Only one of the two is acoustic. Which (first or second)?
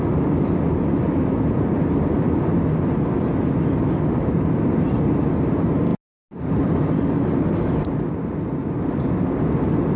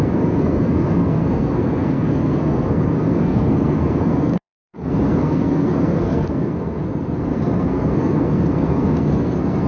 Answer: first